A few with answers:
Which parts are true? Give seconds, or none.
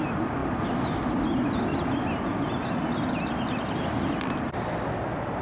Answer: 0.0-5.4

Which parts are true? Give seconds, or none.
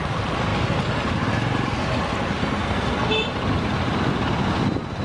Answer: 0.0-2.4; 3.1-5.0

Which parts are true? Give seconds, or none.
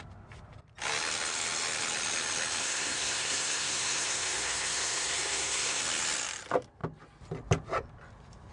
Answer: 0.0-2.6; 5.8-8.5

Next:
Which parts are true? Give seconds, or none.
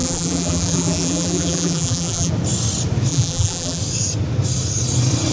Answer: 2.3-3.1; 3.8-5.3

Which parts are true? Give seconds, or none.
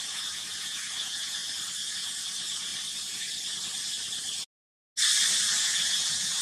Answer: 1.4-1.9; 2.7-5.6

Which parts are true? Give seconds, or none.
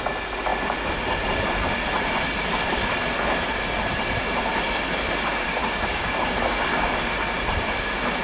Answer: 0.0-5.6; 7.0-8.2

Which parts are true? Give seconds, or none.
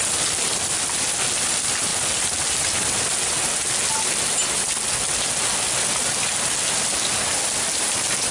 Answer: 0.0-8.3